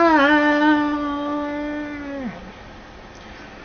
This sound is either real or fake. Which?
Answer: real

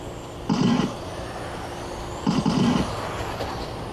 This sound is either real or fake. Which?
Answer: real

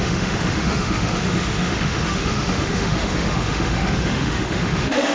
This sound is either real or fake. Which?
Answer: fake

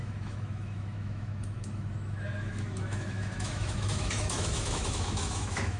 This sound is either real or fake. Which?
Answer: fake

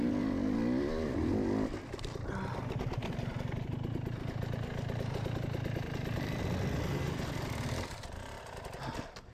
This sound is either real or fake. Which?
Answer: real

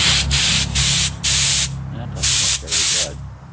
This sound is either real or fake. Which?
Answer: real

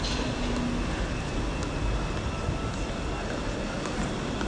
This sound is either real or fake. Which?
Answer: real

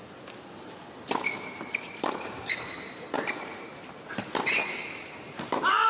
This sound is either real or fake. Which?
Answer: fake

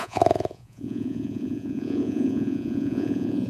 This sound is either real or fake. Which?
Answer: fake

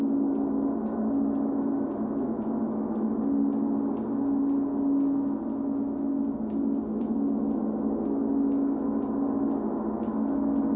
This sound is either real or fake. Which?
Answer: real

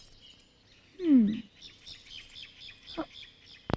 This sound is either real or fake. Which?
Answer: real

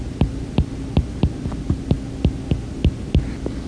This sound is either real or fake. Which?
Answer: real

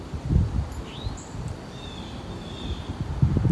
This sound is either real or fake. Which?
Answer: real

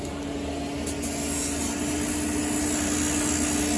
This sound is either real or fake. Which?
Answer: real